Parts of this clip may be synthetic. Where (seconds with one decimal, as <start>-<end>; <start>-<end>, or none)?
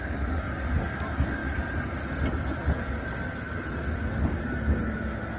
none